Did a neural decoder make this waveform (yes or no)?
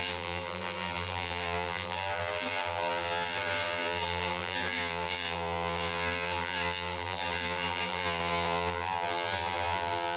yes